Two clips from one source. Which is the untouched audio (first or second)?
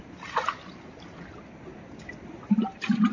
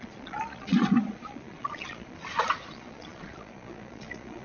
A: first